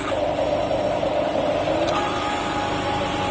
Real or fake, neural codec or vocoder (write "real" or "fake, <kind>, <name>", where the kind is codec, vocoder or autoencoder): real